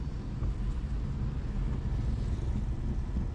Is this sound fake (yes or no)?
no